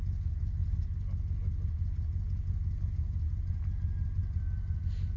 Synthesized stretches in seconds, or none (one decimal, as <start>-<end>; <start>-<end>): none